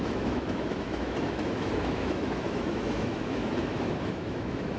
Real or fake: fake